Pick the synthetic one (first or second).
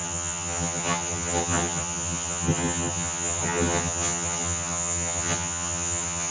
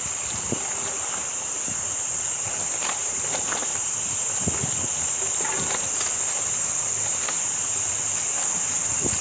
first